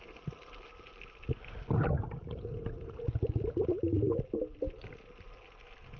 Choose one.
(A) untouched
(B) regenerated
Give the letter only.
A